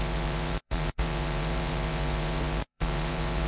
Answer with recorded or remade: remade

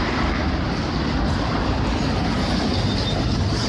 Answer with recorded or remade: recorded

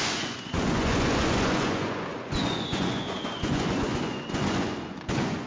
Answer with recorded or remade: remade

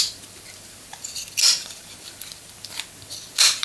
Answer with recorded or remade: remade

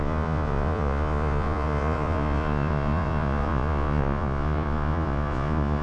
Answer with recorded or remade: remade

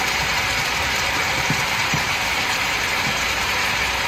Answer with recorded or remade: remade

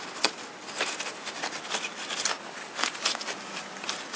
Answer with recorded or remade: recorded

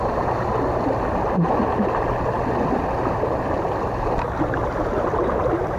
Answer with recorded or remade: recorded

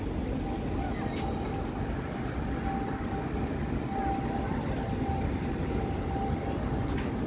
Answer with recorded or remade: recorded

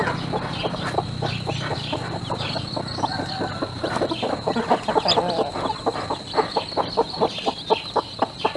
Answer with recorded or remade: remade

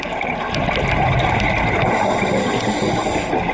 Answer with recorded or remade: recorded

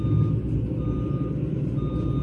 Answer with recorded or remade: recorded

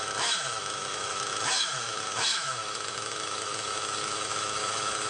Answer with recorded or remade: remade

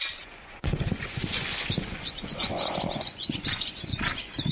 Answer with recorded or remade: remade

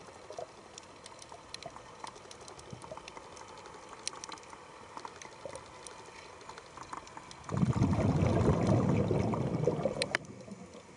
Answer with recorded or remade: recorded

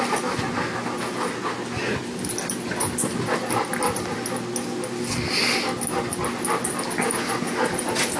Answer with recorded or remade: recorded